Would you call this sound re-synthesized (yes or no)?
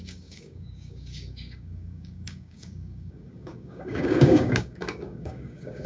yes